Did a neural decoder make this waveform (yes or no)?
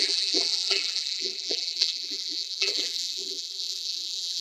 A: yes